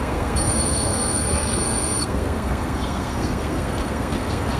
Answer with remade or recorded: remade